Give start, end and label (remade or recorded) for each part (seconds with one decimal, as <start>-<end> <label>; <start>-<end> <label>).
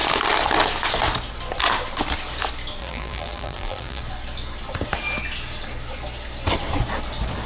0.0-2.8 recorded; 2.8-4.0 remade; 4.0-7.5 recorded